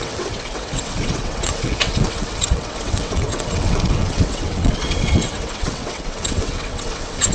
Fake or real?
fake